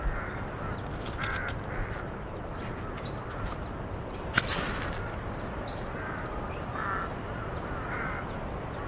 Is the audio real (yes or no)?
yes